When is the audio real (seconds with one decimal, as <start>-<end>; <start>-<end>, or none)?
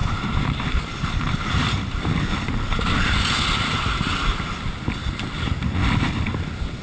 2.0-6.8